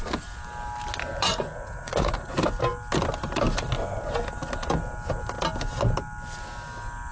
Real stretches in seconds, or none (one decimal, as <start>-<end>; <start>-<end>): 0.0-1.3; 2.3-7.1